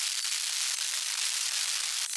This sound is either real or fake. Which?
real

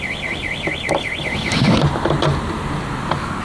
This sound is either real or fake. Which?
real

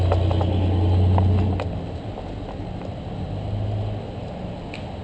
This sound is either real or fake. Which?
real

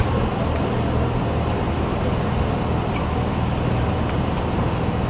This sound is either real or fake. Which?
real